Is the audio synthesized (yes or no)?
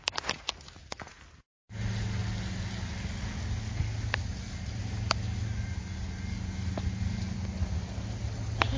no